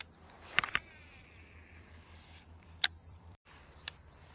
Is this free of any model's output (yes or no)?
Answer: no